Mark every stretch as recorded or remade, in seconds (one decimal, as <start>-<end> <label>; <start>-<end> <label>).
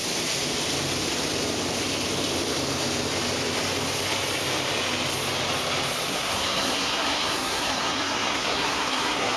0.0-6.1 recorded; 6.1-9.4 remade